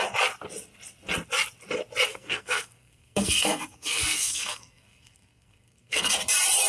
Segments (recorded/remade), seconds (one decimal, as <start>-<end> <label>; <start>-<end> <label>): 0.0-2.1 recorded; 2.1-6.1 remade; 6.1-6.7 recorded